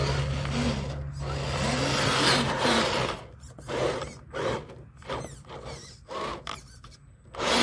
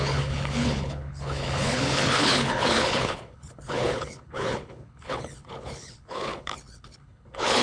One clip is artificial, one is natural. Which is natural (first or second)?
first